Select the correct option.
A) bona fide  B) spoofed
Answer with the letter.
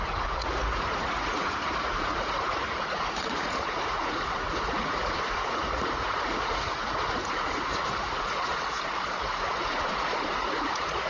B